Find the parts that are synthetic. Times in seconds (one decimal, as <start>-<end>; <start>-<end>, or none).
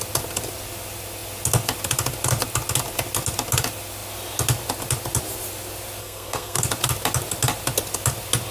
6.0-6.6